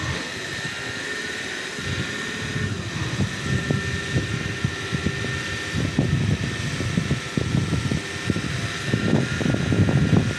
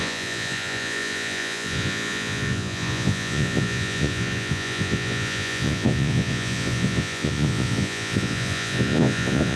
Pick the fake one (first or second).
second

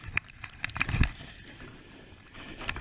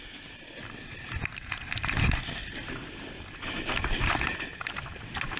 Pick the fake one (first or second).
first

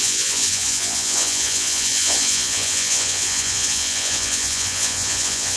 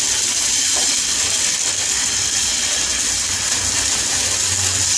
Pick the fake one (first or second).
first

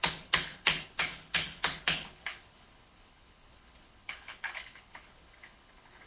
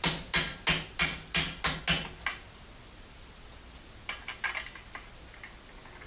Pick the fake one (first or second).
first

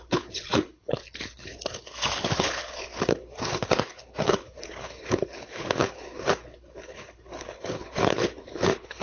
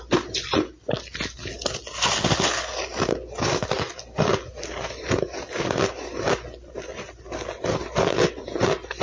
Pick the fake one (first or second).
first